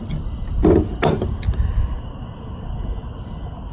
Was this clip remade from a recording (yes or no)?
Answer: no